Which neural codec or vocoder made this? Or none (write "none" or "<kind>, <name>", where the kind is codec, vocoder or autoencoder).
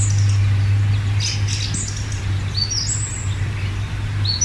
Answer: none